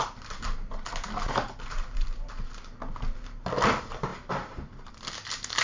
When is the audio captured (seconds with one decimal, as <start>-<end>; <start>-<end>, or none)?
0.0-5.6